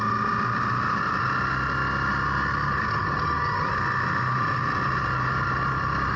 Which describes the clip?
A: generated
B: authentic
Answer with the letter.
B